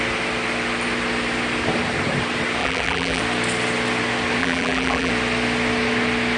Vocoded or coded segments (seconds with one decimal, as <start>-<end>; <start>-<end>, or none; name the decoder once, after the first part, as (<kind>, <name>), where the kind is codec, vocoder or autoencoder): 2.6-3.2 (vocoder, BigVGAN v2); 4.4-5.1

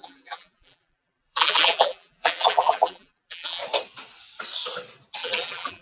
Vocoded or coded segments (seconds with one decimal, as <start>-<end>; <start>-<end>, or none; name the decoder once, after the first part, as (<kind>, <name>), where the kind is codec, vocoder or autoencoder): 0.0-3.6 (vocoder, BigVGAN v2); 5.2-5.8

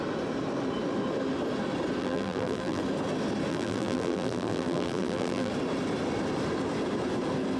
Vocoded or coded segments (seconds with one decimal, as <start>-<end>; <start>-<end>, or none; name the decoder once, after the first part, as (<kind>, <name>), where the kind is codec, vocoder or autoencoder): 2.0-2.8 (vocoder, BigVGAN v2); 3.5-5.5